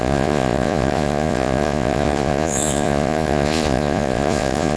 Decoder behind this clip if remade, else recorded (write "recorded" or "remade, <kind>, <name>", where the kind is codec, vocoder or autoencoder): remade, vocoder, Vocos